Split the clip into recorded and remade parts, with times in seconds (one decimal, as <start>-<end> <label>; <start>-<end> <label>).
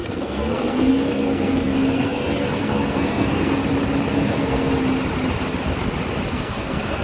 0.0-3.6 remade; 3.6-4.1 recorded; 4.1-4.7 remade; 4.7-6.3 recorded; 6.3-7.0 remade